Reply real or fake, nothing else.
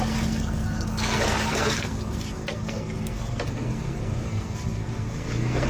fake